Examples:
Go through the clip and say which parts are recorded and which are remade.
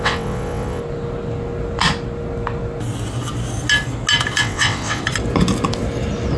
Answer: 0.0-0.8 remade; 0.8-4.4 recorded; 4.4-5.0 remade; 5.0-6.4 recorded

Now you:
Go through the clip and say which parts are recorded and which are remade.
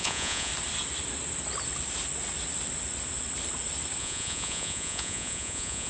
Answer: 0.0-0.5 remade; 0.5-4.0 recorded; 4.0-5.9 remade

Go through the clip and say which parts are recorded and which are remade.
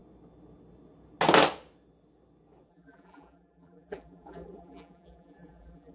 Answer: 0.0-2.7 recorded; 2.7-5.9 remade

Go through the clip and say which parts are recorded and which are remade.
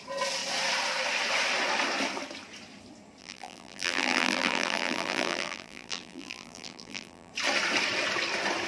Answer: 0.0-3.2 recorded; 3.2-7.3 remade; 7.3-8.7 recorded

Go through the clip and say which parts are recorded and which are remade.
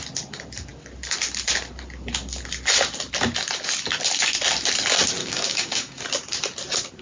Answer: 0.0-5.2 recorded; 5.2-6.0 remade; 6.0-7.0 recorded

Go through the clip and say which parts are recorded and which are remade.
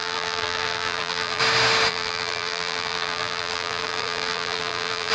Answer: 0.0-1.4 remade; 1.4-1.9 recorded; 1.9-5.1 remade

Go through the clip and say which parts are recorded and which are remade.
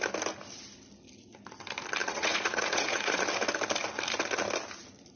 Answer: 0.0-2.0 recorded; 2.0-3.2 remade; 3.2-5.2 recorded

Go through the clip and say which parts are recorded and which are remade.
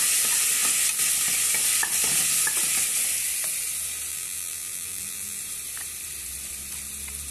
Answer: 0.0-4.1 recorded; 4.1-5.4 remade; 5.4-7.3 recorded